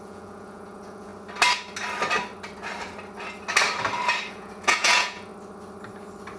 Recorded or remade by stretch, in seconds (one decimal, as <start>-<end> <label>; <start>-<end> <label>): 0.0-1.1 remade; 1.1-4.3 recorded; 4.3-5.3 remade; 5.3-6.4 recorded